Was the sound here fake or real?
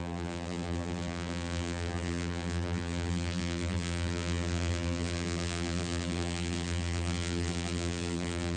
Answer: fake